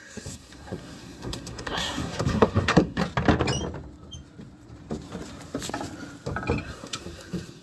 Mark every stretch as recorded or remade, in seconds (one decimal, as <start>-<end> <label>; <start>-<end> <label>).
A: 0.0-3.0 remade; 3.0-6.6 recorded; 6.6-7.6 remade